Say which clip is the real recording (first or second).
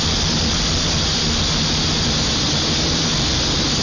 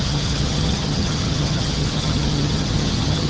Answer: first